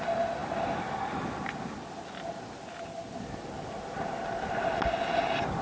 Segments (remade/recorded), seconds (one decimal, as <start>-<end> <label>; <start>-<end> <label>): 0.0-5.6 recorded